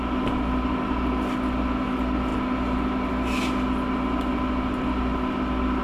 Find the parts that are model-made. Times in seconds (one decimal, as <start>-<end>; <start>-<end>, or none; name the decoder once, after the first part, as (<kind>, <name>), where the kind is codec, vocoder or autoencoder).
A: none